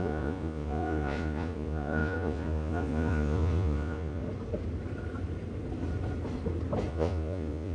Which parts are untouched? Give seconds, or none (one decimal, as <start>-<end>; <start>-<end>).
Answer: 4.2-6.9